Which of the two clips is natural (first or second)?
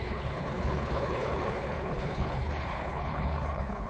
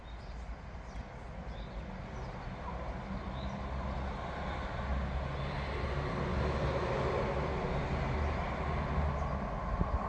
second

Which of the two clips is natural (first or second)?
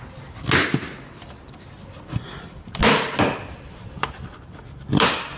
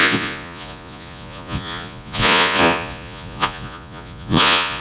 first